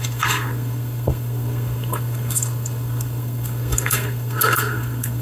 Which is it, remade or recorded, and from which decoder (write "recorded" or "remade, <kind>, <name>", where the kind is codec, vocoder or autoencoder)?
remade, codec, SNAC